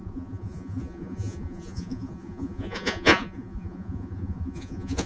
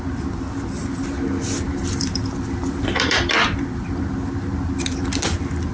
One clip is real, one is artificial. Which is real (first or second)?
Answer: second